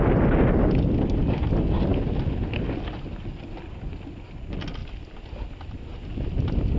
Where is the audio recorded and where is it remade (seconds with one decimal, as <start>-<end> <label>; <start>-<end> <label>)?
0.0-6.8 recorded